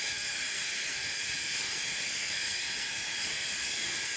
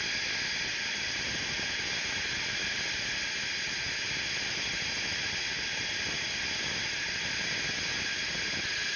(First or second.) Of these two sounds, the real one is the second